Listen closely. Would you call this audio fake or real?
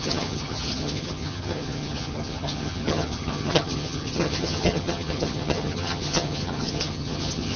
fake